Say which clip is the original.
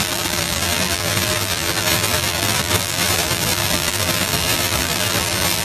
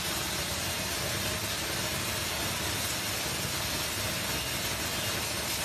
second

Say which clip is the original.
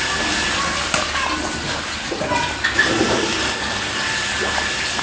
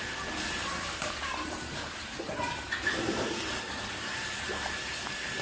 first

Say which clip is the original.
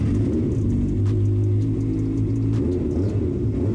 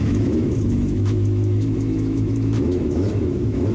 first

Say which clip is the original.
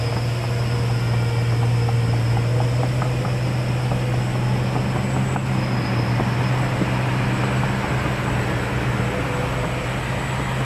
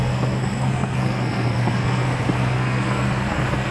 first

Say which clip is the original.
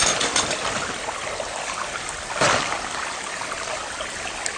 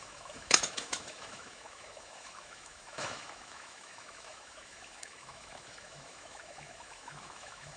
first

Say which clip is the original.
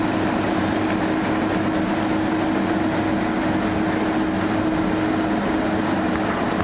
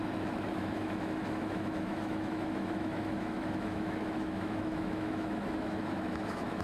first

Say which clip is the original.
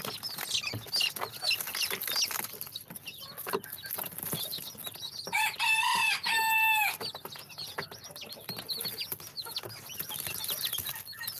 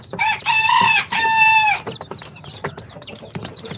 first